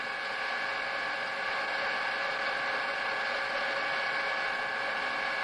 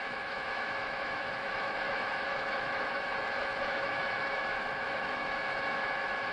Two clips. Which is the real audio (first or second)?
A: first